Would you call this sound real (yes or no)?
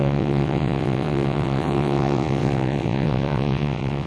no